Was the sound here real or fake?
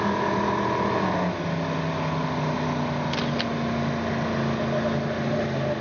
real